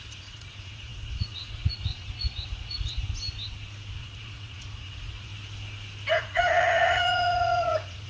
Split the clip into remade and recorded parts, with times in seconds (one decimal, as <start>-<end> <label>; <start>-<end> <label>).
0.0-3.0 remade; 3.0-4.0 recorded; 4.0-5.3 remade; 5.3-6.1 recorded; 6.1-8.1 remade